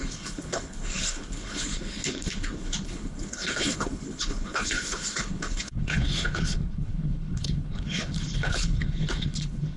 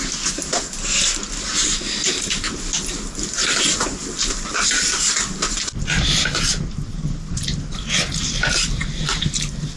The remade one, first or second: first